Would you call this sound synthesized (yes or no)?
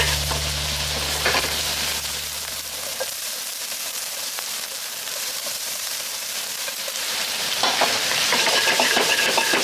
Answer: yes